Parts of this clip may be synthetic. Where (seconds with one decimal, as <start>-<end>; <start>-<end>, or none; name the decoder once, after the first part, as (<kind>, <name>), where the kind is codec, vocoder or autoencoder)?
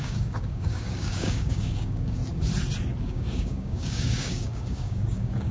0.0-2.2 (codec, DAC); 3.0-5.5